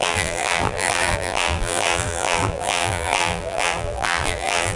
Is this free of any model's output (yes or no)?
no